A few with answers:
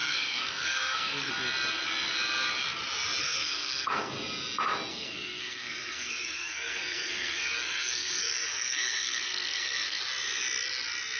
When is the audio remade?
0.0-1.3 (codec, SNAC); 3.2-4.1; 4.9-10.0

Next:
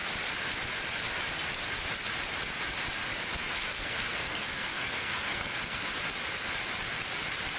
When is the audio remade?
3.5-5.9 (codec, SNAC)

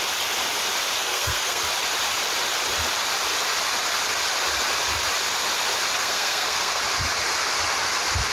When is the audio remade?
1.0-1.6 (codec, SNAC); 6.0-6.8

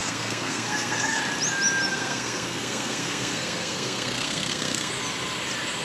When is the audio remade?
0.0-1.2 (codec, SNAC); 1.9-4.9

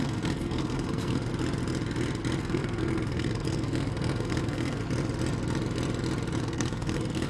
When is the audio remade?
0.0-1.3 (codec, SNAC); 2.4-4.8; 6.4-7.3